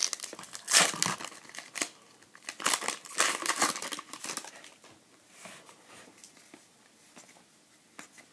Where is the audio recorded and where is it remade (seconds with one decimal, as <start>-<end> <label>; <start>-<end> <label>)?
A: 0.0-8.3 recorded